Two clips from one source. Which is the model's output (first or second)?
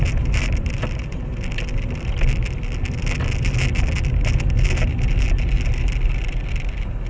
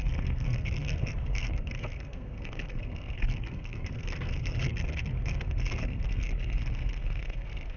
second